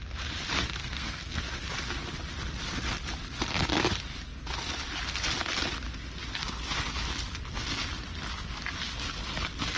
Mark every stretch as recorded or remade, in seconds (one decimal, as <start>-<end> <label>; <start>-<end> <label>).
0.0-0.8 recorded; 0.8-1.4 remade; 1.4-9.8 recorded